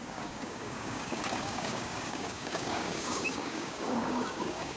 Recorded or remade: remade